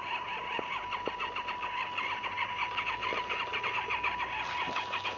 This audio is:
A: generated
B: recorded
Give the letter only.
B